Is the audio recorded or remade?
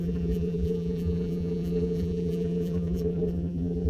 remade